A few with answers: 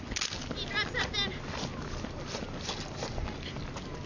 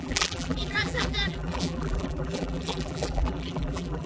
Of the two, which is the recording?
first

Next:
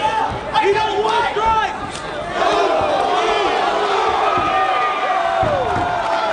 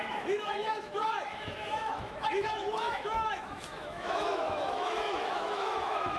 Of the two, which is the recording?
first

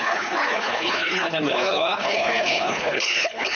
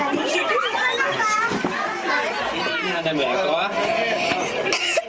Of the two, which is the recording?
second